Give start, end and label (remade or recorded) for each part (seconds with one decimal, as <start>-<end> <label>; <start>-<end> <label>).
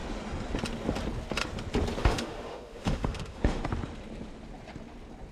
0.0-2.0 recorded; 2.0-3.6 remade; 3.6-5.3 recorded